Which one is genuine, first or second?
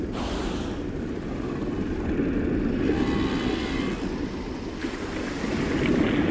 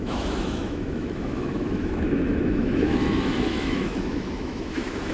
first